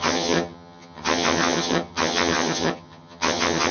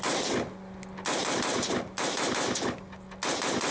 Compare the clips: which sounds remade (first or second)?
first